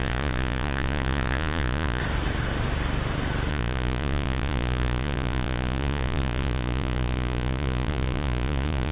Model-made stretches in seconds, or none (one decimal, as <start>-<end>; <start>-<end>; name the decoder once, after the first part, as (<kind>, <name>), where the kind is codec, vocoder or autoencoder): 0.0-2.0 (vocoder, Vocos); 3.5-8.9